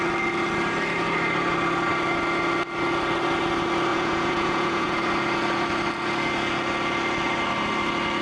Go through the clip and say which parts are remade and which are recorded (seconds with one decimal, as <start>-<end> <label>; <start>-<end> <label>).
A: 0.0-3.9 recorded; 3.9-5.0 remade; 5.0-8.2 recorded